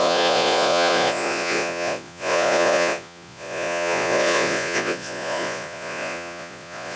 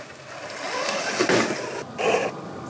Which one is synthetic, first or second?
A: first